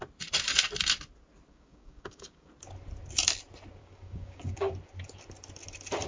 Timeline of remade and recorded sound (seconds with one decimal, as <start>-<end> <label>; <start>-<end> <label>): 0.0-1.5 recorded; 1.5-2.5 remade; 2.5-3.8 recorded; 3.8-4.7 remade; 4.7-6.1 recorded